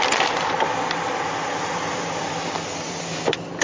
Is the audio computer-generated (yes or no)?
no